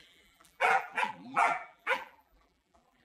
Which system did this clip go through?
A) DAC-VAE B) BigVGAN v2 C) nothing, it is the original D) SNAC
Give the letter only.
B